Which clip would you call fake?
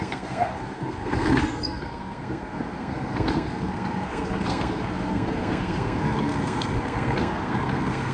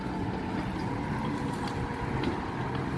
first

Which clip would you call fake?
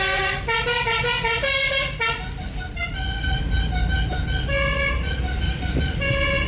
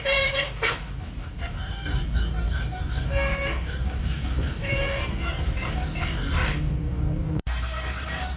second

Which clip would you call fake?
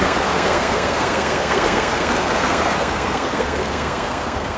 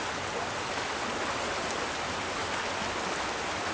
first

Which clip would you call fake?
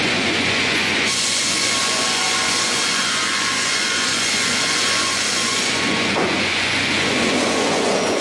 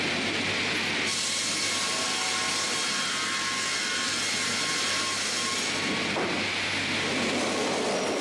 first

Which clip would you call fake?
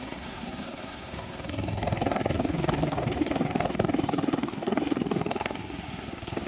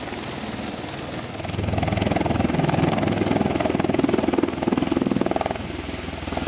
first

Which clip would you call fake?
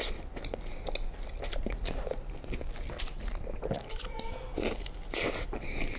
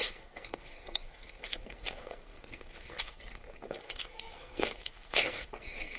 second